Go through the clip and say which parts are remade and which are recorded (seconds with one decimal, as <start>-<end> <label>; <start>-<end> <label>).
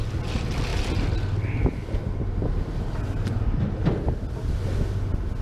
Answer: 0.0-5.4 recorded